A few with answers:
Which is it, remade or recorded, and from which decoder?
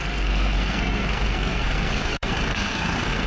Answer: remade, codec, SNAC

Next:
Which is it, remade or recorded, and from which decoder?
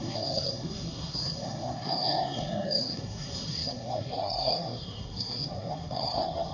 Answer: remade, codec, SNAC